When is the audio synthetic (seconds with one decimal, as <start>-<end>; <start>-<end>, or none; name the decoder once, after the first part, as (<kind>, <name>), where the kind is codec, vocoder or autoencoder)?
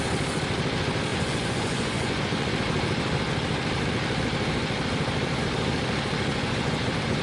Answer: 1.1-2.5 (vocoder, Vocos); 6.3-7.2